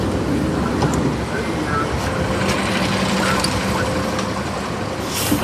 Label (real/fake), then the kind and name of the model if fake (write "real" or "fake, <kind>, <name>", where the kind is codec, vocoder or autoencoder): real